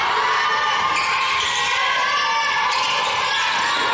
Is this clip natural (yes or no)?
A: yes